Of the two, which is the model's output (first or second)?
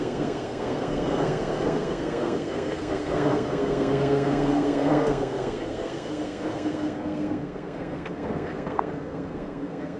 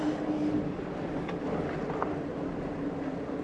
first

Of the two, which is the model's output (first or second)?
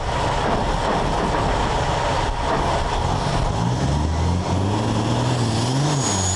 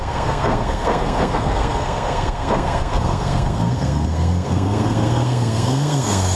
second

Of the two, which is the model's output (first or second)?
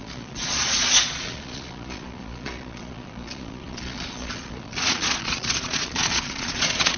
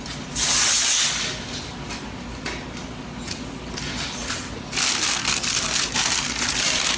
first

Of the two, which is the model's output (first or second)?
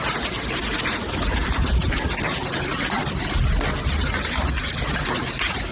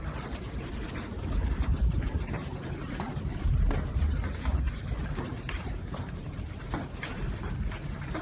second